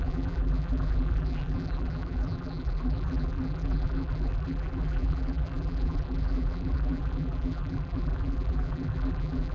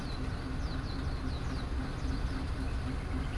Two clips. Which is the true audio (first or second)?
second